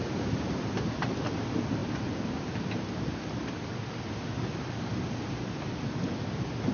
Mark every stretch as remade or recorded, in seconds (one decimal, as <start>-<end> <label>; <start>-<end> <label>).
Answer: 0.0-6.7 recorded